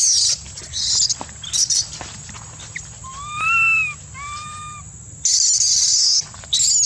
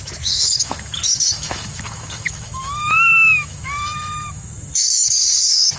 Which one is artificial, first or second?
second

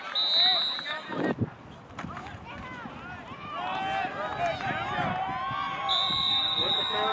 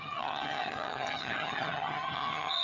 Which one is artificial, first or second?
second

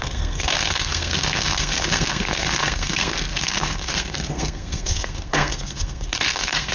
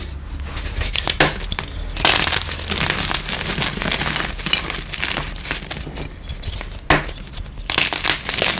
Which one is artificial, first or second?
first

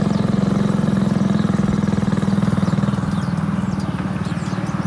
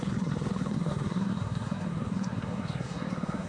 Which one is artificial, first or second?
second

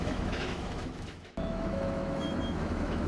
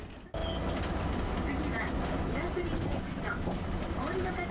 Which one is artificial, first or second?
first